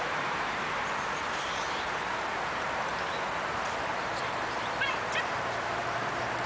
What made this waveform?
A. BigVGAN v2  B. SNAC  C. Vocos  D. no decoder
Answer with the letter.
A